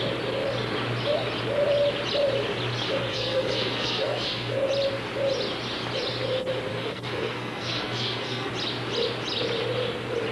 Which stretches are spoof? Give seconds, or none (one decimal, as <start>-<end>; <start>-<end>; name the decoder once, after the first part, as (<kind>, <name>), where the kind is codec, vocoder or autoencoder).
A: 3.1-4.6 (codec, SNAC); 6.7-8.5